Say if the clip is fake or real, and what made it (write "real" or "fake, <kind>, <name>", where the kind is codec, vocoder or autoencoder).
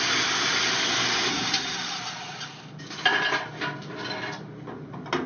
real